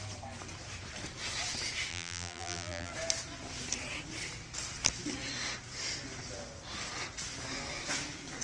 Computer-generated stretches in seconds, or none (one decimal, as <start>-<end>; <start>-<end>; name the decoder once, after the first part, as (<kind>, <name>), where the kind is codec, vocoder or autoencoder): 1.9-2.9 (vocoder, BigVGAN v2)